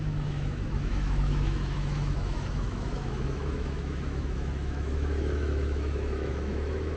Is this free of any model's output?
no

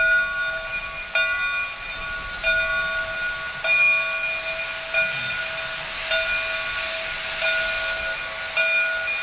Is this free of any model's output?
yes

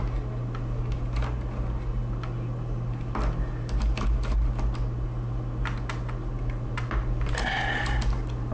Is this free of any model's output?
yes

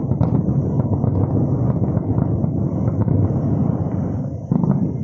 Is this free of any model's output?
yes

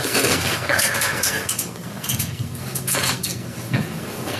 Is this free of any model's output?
no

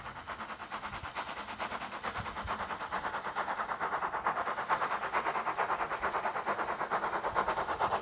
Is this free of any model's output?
yes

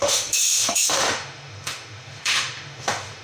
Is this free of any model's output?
no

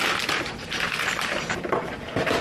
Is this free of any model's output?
no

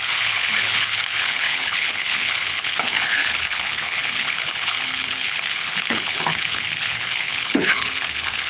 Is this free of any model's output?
no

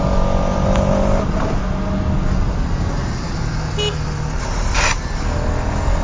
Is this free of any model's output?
yes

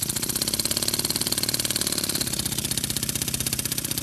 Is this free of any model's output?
no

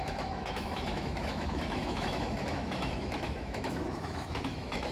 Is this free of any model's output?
no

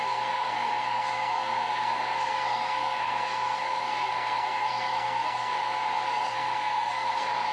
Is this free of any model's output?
no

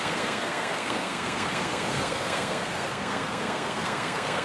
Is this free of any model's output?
no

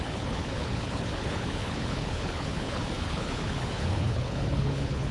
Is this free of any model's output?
no